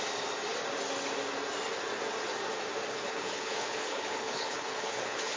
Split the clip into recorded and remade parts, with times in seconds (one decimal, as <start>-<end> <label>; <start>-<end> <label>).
0.0-2.9 recorded; 2.9-5.4 remade